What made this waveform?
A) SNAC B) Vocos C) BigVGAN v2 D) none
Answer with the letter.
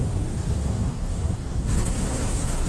A